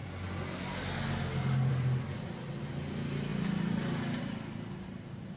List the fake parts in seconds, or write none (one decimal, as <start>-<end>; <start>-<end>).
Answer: none